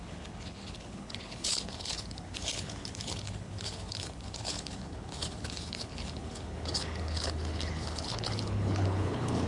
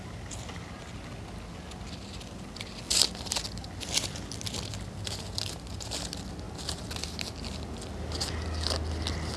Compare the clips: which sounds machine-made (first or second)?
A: first